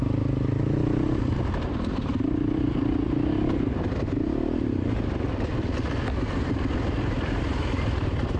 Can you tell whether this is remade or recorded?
recorded